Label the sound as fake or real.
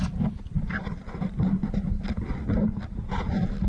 real